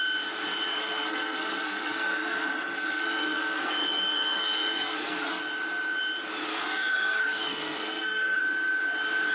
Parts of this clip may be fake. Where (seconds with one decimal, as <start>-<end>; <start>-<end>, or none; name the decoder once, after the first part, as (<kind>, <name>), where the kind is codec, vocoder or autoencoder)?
0.7-5.4 (codec, SNAC); 6.5-8.4